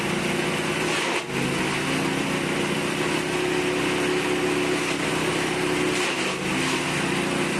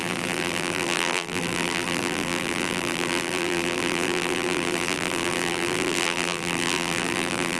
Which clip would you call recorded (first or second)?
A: first